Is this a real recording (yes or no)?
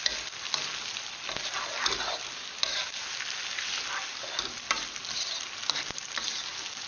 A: yes